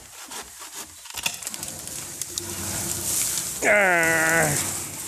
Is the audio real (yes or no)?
yes